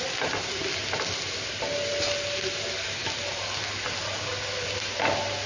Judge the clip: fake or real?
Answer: real